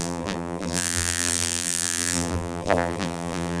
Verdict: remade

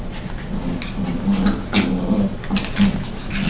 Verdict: recorded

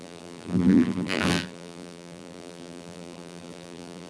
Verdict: remade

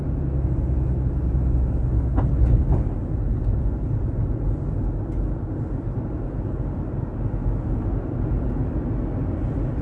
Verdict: recorded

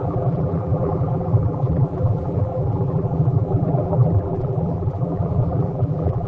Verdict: remade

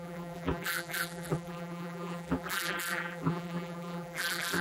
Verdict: remade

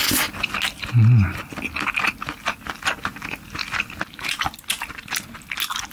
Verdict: recorded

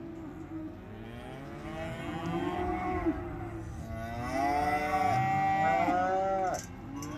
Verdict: recorded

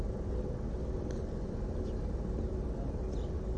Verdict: recorded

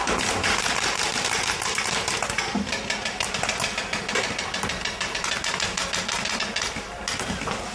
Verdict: recorded